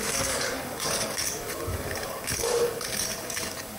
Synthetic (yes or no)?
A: yes